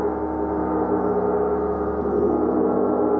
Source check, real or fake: real